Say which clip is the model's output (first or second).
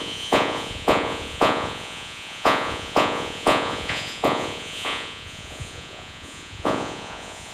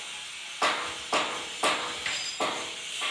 first